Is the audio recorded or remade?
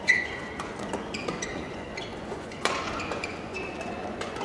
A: remade